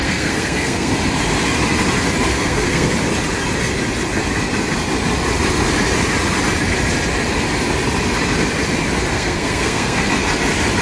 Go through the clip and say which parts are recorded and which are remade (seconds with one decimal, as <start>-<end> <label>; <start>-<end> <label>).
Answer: 0.0-1.0 remade; 1.0-2.3 recorded; 2.3-2.9 remade; 2.9-9.1 recorded; 9.1-10.1 remade; 10.1-10.8 recorded